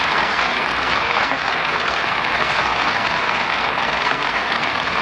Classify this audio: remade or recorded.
remade